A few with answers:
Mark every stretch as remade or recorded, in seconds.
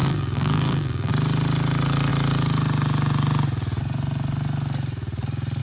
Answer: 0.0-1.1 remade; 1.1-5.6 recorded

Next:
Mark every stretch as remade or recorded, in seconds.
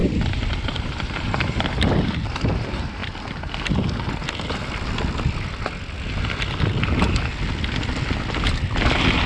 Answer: 0.0-1.9 remade; 1.9-9.3 recorded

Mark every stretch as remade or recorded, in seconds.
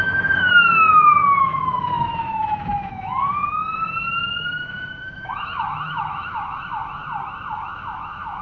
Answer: 0.0-7.0 remade; 7.0-7.5 recorded; 7.5-8.4 remade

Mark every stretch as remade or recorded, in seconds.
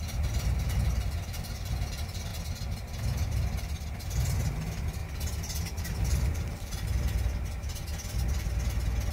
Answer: 0.0-2.3 remade; 2.3-3.9 recorded; 3.9-5.0 remade; 5.0-5.8 recorded; 5.8-7.8 remade; 7.8-9.1 recorded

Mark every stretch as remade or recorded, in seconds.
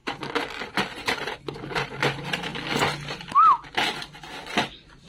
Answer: 0.0-5.1 recorded